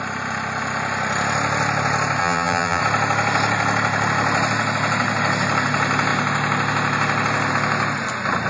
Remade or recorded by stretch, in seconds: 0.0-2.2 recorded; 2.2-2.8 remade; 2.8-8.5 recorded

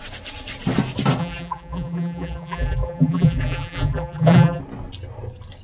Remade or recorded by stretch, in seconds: 0.0-1.2 recorded; 1.2-4.6 remade; 4.6-5.6 recorded